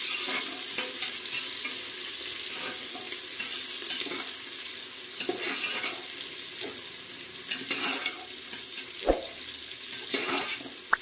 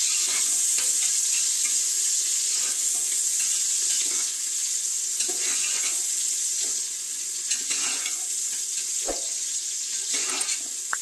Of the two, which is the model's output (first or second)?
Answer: second